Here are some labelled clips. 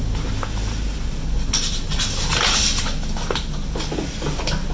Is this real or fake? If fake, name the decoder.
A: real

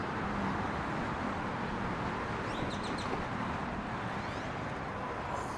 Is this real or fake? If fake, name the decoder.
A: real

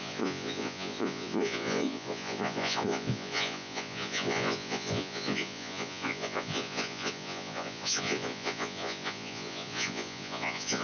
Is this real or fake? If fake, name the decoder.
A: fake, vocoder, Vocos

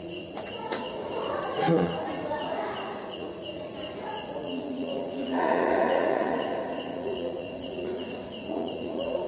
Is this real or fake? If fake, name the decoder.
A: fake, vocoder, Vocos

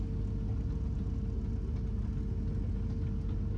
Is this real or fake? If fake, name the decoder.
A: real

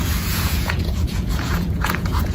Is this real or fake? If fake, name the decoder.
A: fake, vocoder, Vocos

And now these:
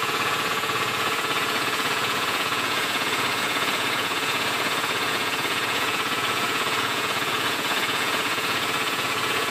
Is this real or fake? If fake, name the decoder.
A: fake, vocoder, Vocos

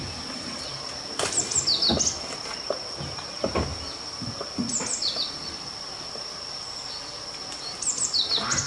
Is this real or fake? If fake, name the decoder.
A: real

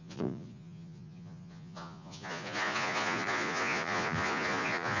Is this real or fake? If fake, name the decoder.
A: fake, vocoder, Vocos